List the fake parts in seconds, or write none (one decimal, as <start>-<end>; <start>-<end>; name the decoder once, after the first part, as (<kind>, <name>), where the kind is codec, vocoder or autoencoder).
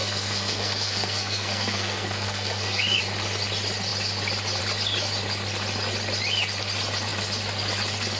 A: 0.0-3.0 (codec, SNAC)